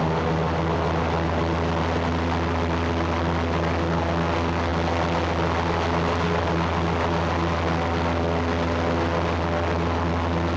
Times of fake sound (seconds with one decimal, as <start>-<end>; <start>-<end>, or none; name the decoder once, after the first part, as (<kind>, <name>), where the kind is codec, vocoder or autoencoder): none

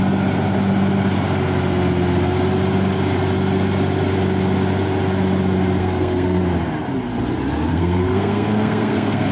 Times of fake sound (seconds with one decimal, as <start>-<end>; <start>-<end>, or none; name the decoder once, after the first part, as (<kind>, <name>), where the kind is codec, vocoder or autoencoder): 5.8-6.4 (codec, SNAC); 7.7-9.3

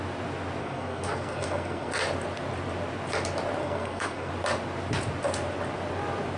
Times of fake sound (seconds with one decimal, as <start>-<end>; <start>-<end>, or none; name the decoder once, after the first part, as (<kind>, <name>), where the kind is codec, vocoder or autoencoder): 0.6-1.9 (codec, SNAC); 3.6-4.3

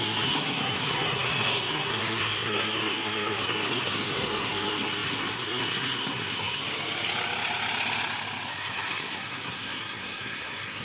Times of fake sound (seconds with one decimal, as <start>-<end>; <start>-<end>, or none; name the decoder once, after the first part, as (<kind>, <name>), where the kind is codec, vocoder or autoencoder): 0.0-6.6 (codec, SNAC); 8.5-10.8

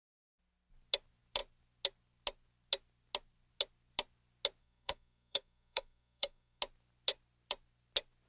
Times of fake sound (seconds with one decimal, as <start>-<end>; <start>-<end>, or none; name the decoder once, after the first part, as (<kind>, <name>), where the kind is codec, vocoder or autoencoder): 4.6-6.6 (codec, SNAC)

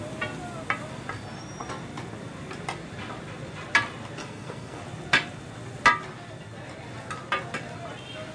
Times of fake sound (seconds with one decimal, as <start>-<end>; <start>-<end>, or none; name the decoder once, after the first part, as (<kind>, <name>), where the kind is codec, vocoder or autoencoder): 4.2-4.8 (codec, SNAC)